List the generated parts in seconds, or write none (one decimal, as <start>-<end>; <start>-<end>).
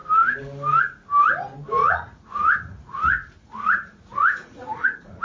1.8-5.2